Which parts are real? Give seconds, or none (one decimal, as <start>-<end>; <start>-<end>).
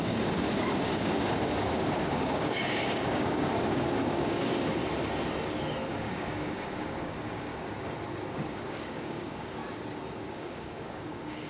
4.8-5.9; 7.5-8.3; 9.6-10.3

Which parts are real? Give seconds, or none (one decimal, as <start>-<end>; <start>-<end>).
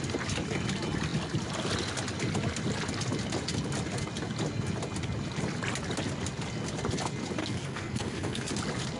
0.0-7.4; 8.5-9.0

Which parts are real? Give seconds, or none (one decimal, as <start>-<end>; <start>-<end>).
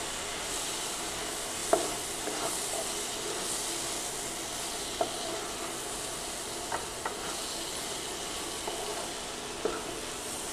0.0-10.5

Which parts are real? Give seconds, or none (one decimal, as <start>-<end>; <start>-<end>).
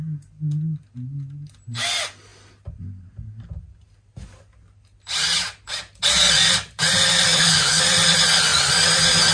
0.0-7.3; 7.8-9.3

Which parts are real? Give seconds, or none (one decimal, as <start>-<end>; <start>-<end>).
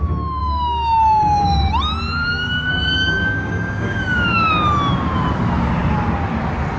0.0-0.4; 1.7-2.2; 4.5-6.8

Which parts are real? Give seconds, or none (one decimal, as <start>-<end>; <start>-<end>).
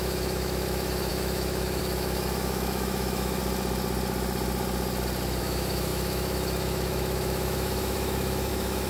3.4-5.4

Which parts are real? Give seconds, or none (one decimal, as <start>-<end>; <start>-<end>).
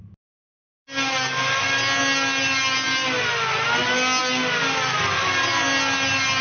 0.0-6.4